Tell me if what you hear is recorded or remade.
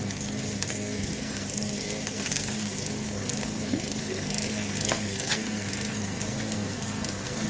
remade